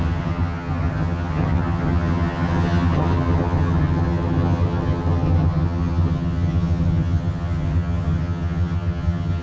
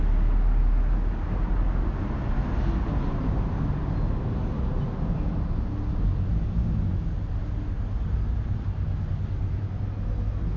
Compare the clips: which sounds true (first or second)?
second